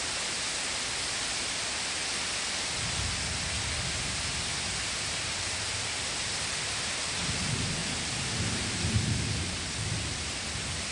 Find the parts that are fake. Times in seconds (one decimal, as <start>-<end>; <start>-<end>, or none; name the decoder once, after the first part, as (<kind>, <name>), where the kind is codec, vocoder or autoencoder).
7.8-9.4 (vocoder, BigVGAN v2)